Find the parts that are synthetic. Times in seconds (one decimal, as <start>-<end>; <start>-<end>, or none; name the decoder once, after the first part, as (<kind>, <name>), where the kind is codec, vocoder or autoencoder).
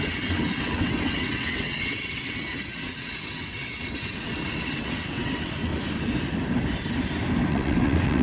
0.0-5.7 (vocoder, WaveNeXt); 7.5-8.2